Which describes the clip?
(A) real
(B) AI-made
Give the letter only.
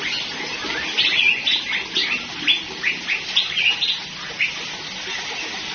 A